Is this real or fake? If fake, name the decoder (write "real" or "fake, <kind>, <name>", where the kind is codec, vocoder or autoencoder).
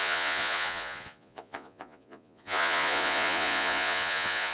fake, vocoder, Vocos